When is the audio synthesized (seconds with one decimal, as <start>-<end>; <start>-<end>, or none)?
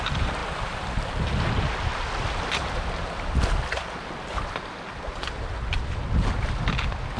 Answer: none